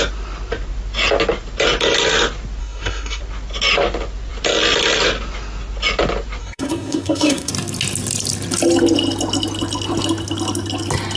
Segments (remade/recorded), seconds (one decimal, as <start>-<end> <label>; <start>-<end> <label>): 0.0-2.6 recorded; 2.6-3.2 remade; 3.2-6.4 recorded; 6.4-7.5 remade; 7.5-11.2 recorded